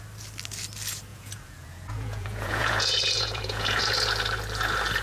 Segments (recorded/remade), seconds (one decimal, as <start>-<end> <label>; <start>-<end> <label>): 0.0-1.1 recorded; 1.1-3.8 remade; 3.8-5.0 recorded